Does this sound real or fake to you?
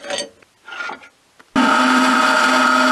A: real